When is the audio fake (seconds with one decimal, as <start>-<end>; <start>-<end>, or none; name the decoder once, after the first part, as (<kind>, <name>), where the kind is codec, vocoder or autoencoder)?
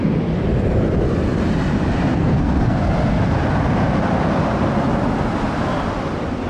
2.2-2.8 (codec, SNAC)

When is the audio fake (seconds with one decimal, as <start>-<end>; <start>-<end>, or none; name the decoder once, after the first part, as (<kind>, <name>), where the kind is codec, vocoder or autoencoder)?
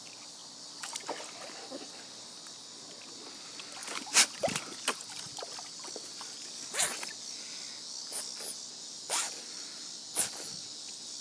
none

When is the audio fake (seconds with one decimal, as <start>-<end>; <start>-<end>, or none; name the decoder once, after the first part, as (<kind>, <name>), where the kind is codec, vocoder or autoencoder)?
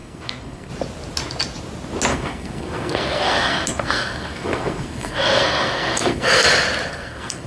0.0-0.7 (codec, SNAC); 2.1-6.4; 6.9-7.5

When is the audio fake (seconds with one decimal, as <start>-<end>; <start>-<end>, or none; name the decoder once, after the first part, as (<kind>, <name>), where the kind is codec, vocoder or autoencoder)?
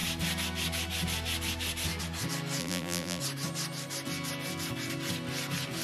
2.6-3.2 (vocoder, BigVGAN v2)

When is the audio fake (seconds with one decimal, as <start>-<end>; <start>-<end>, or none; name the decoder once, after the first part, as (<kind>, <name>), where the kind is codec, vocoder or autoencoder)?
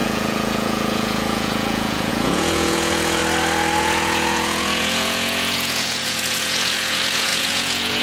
0.0-3.2 (vocoder, Vocos); 3.8-8.0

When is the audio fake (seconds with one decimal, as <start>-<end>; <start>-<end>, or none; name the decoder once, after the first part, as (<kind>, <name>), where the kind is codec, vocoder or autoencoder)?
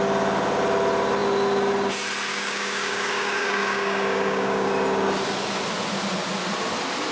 2.3-4.7 (codec, DAC)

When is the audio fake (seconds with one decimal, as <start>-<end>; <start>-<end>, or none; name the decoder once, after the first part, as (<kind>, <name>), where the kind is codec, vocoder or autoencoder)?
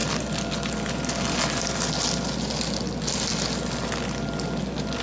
none